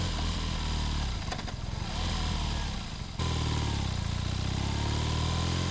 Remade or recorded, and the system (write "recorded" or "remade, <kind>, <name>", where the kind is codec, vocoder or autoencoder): recorded